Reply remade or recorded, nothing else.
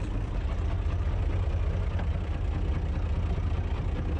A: recorded